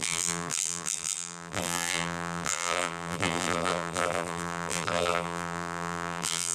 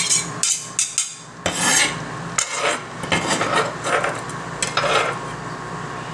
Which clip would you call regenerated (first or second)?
first